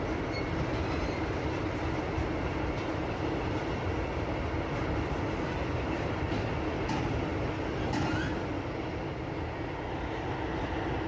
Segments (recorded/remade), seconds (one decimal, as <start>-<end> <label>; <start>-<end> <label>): 0.0-11.1 recorded